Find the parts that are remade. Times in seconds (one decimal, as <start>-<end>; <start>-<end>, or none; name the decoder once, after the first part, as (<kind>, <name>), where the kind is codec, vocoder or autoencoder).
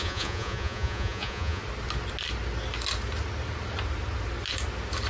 0.0-1.6 (vocoder, Vocos)